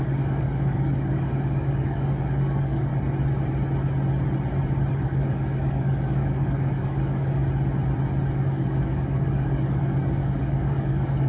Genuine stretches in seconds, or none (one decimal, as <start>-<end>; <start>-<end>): 2.9-4.9; 7.4-8.3